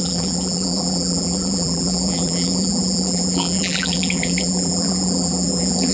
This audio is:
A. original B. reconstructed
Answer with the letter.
B